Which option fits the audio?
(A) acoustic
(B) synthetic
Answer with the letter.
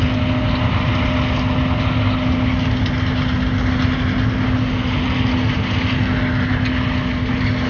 A